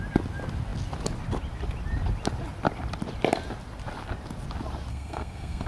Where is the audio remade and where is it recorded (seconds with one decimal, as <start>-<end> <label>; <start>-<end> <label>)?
0.0-4.9 recorded; 4.9-5.7 remade